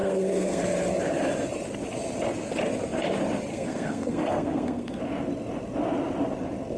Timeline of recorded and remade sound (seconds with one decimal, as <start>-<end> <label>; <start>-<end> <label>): 0.0-0.6 remade; 0.6-3.5 recorded; 3.5-5.0 remade; 5.0-6.8 recorded